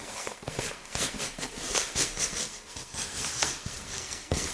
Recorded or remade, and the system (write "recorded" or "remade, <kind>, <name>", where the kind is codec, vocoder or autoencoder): remade, codec, SNAC